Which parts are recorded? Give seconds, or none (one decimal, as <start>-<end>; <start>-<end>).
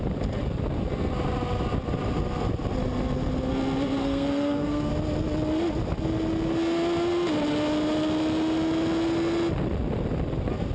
0.0-4.0; 4.9-10.7